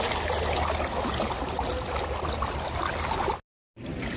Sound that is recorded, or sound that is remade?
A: recorded